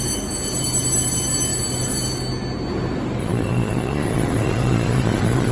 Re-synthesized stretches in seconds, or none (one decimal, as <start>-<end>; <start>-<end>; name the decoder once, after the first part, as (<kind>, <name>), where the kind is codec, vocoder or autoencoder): 3.2-5.5 (vocoder, Vocos)